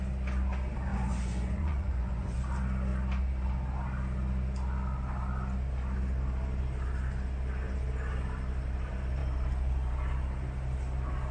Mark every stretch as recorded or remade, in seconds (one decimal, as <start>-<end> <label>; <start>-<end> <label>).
0.0-0.9 recorded; 0.9-2.4 remade; 2.4-11.3 recorded